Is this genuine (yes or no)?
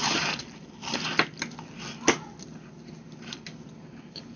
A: yes